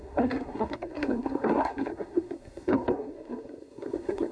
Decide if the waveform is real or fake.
fake